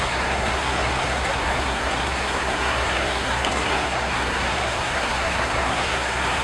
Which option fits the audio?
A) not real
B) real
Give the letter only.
A